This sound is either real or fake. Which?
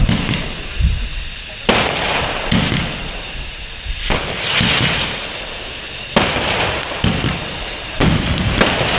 real